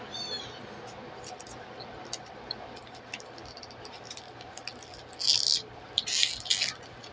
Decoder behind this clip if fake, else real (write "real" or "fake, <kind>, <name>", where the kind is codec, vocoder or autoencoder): real